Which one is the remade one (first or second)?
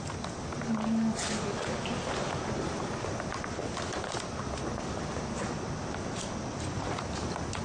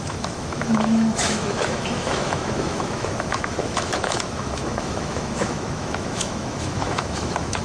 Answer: second